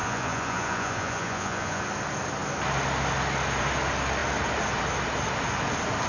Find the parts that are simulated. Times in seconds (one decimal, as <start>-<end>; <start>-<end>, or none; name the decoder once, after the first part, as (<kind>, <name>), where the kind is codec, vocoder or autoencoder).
0.0-1.8 (vocoder, Vocos)